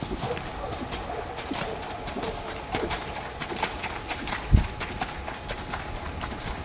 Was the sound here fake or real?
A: real